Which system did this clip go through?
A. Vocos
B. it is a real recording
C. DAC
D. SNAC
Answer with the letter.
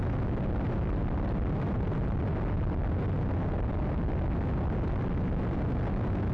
B